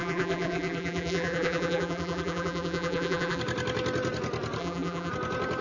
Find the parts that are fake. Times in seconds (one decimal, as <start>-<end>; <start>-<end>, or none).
0.0-3.4; 4.6-5.1